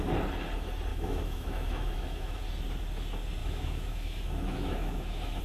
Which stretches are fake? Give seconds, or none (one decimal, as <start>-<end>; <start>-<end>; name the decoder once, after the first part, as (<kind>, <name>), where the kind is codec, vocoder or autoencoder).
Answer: 0.9-2.4 (autoencoder, DAC-VAE); 3.4-5.4